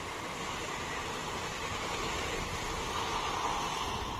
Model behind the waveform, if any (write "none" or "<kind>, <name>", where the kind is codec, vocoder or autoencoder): none